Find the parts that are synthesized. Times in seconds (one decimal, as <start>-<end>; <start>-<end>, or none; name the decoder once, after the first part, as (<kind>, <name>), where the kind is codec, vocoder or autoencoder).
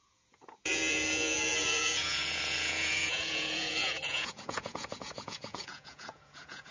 0.0-6.7 (vocoder, Vocos)